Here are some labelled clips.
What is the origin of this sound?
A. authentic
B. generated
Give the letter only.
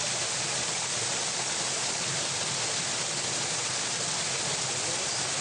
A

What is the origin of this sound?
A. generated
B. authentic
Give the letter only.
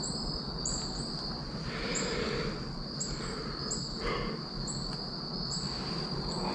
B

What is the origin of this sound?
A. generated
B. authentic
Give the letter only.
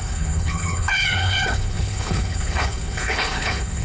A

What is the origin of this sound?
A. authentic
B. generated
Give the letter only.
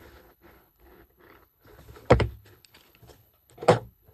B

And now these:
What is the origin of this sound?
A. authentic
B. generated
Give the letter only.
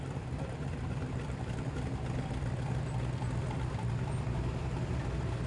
A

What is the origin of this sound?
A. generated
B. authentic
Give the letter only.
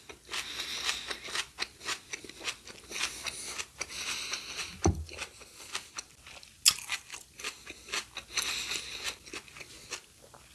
B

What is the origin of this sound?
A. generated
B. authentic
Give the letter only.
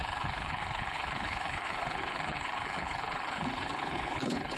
A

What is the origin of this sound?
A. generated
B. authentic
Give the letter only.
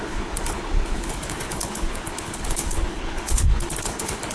A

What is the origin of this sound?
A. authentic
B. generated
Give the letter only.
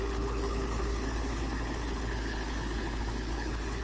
B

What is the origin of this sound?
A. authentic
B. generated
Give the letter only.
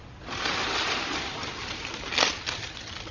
A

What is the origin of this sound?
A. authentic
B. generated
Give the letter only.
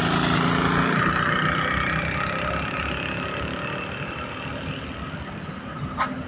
A